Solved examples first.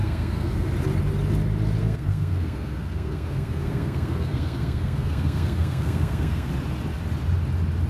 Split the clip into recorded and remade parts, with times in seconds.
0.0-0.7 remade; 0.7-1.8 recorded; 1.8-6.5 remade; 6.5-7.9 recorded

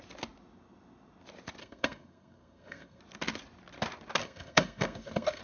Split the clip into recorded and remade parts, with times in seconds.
0.0-1.6 recorded; 1.6-3.0 remade; 3.0-4.2 recorded; 4.2-5.4 remade

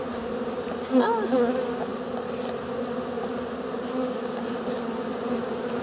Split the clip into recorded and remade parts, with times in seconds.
0.0-5.8 recorded

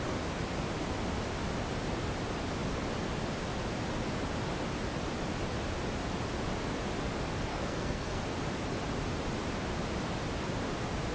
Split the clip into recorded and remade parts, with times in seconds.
0.0-7.5 recorded; 7.5-8.2 remade; 8.2-11.1 recorded

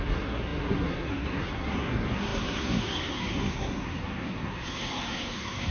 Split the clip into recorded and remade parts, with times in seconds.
0.0-5.7 remade